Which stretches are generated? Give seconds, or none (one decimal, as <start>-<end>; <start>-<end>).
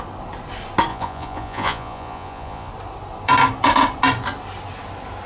0.9-2.7